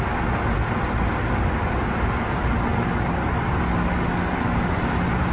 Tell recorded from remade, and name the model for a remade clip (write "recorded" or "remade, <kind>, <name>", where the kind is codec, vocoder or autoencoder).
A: recorded